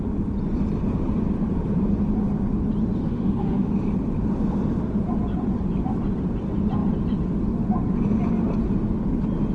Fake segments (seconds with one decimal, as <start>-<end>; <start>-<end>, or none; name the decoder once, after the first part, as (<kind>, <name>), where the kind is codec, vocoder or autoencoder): 3.1-3.7 (autoencoder, DAC-VAE)